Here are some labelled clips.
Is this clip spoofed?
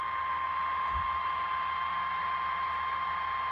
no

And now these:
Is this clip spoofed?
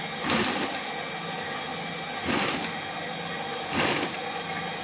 no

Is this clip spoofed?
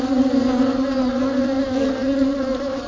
no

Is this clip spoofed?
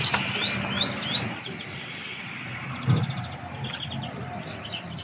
no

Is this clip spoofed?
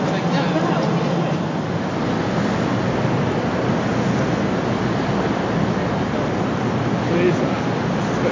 no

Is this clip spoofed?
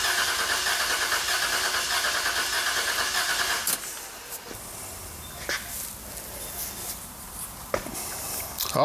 no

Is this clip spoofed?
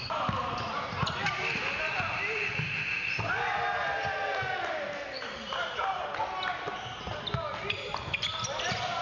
no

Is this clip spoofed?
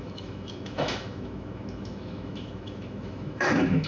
yes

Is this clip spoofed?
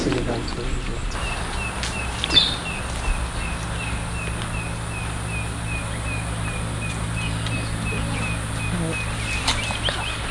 no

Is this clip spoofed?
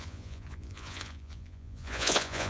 yes